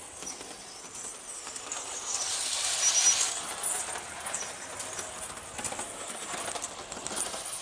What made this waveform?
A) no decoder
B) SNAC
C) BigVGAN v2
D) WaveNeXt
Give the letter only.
A